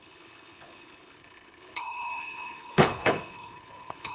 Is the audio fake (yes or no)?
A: yes